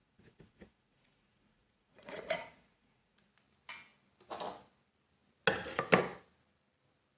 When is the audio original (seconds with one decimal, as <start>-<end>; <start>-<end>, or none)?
3.3-7.2